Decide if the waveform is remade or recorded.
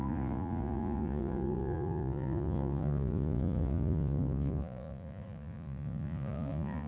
remade